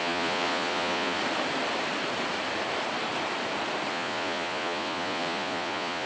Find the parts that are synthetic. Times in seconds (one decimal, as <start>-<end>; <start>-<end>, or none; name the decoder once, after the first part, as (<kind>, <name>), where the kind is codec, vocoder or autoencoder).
0.0-1.2 (vocoder, Vocos); 3.9-6.1